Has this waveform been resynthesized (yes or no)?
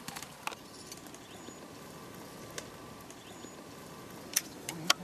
no